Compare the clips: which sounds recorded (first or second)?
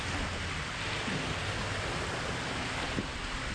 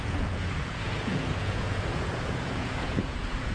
first